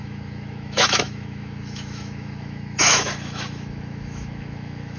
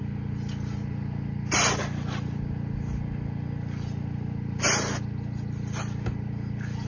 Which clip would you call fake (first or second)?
first